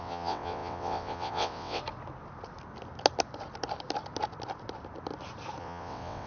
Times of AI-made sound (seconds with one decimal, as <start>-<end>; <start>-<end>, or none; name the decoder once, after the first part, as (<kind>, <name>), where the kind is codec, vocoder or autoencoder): 0.0-1.8 (vocoder, WaveNeXt); 5.6-6.3